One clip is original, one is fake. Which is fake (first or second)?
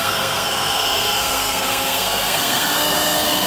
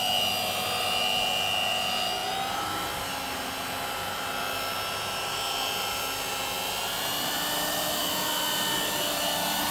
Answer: first